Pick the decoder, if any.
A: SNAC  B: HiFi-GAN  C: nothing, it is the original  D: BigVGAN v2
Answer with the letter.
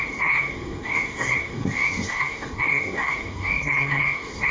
A